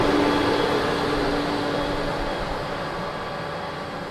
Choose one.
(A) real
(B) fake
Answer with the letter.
A